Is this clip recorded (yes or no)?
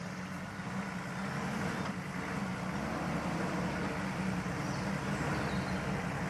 yes